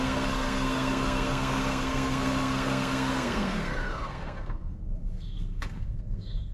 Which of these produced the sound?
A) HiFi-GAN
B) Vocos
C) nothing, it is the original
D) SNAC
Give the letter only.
D